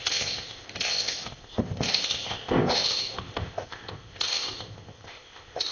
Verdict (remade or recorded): remade